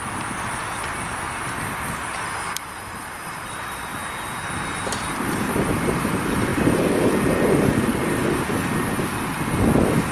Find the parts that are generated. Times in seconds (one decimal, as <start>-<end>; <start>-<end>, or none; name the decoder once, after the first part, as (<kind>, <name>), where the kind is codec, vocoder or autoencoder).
0.5-3.9 (vocoder, BigVGAN v2); 4.8-8.2